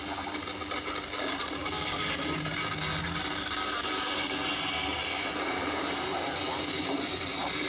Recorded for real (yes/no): yes